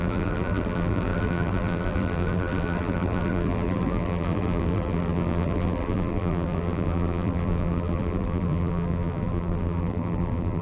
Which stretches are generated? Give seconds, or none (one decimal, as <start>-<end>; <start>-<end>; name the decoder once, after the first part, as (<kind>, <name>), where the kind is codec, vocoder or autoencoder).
0.0-10.6 (vocoder, BigVGAN v2)